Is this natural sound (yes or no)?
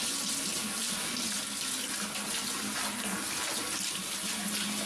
yes